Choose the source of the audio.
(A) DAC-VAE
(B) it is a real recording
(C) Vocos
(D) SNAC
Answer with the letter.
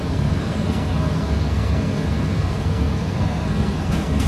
D